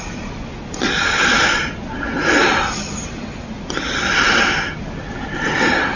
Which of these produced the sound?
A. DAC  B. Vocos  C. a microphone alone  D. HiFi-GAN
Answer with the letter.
C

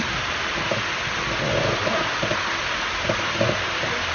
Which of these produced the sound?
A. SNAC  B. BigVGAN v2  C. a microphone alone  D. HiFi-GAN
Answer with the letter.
C